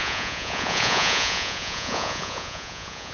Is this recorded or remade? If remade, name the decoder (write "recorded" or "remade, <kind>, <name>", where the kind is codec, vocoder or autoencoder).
remade, vocoder, Vocos